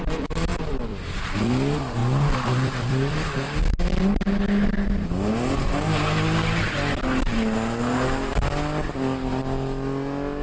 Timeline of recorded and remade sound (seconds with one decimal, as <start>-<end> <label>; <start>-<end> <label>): 0.0-0.5 recorded; 0.5-1.5 remade; 1.5-2.0 recorded; 2.0-3.6 remade; 3.6-10.4 recorded